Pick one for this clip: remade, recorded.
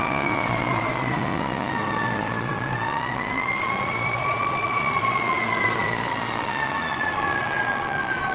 remade